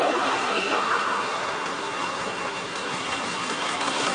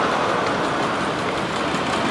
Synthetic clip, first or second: first